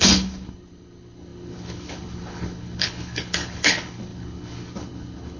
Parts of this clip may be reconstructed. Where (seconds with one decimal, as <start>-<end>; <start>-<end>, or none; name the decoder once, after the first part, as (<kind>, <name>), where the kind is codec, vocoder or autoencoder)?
0.0-5.4 (codec, HILCodec)